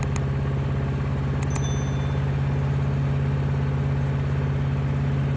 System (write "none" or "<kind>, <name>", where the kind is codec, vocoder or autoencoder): none